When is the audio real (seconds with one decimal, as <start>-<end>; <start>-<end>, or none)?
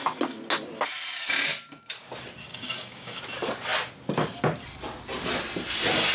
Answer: 0.0-2.5; 3.2-6.1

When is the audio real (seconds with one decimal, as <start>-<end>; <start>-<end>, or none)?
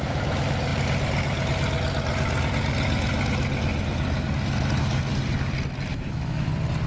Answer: 0.0-5.9; 6.5-6.9